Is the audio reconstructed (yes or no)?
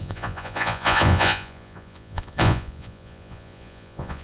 yes